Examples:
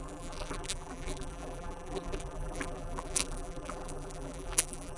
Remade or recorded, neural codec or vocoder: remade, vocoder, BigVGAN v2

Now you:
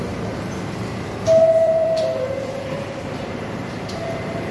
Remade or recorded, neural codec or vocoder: remade, vocoder, BigVGAN v2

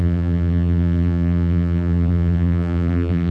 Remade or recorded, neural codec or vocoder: remade, vocoder, BigVGAN v2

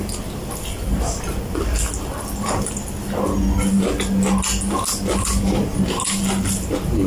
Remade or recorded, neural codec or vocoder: recorded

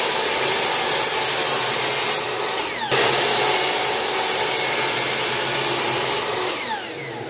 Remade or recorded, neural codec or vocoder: recorded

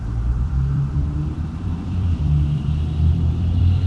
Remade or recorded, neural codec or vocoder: remade, vocoder, BigVGAN v2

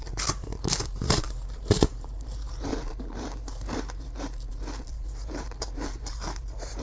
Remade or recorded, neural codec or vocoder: remade, vocoder, BigVGAN v2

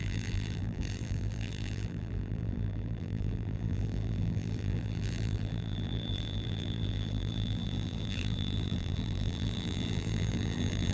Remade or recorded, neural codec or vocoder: remade, vocoder, BigVGAN v2